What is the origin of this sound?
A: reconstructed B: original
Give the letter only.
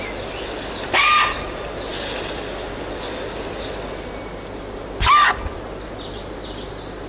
B